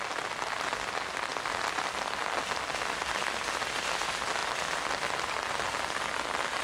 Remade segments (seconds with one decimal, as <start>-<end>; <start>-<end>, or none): none